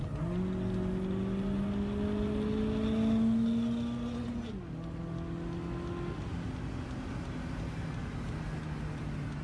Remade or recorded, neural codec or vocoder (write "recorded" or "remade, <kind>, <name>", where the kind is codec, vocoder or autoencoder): recorded